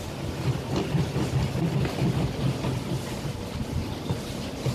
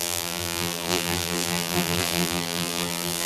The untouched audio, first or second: first